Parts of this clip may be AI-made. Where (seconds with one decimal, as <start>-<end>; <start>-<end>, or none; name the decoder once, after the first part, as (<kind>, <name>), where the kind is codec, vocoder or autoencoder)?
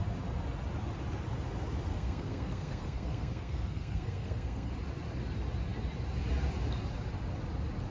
1.9-4.7 (codec, SNAC)